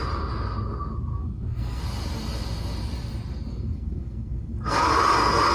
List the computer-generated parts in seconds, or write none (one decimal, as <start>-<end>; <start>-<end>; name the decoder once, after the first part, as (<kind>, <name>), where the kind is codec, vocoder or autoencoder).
1.1-1.8 (codec, SNAC); 3.5-5.0